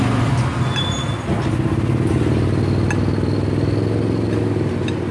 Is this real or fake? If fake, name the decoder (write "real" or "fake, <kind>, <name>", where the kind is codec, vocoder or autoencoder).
real